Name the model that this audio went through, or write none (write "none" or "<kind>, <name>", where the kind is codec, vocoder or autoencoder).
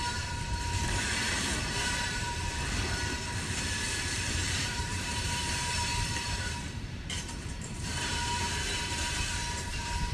vocoder, BigVGAN v2